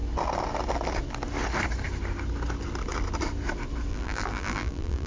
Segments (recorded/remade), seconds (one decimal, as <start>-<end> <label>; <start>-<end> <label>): 0.0-3.9 recorded; 3.9-5.1 remade

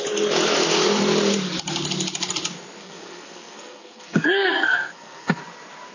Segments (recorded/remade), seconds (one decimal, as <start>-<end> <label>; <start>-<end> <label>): 0.0-2.8 recorded; 2.8-5.4 remade; 5.4-5.9 recorded

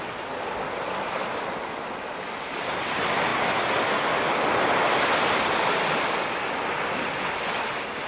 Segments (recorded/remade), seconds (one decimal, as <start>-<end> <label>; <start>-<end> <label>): 0.0-8.1 recorded

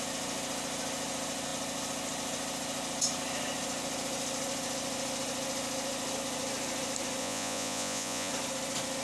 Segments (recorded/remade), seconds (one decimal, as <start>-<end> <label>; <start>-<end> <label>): 0.0-7.2 recorded; 7.2-8.3 remade; 8.3-9.0 recorded

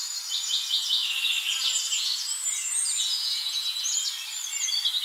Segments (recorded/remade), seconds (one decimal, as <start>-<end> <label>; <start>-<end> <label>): 0.0-2.8 recorded; 2.8-3.8 remade; 3.8-5.0 recorded